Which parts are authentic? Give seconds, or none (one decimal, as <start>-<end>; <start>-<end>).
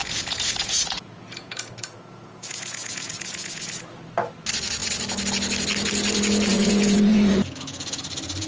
3.8-6.5; 8.0-8.5